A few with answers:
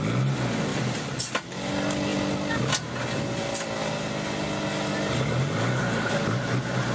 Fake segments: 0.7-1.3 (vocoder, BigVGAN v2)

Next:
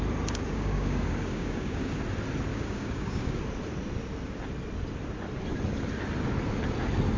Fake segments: 0.5-2.0 (codec, DAC); 2.5-3.4

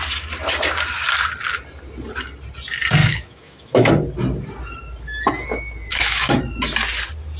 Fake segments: 3.0-3.9 (autoencoder, DAC-VAE); 5.9-6.4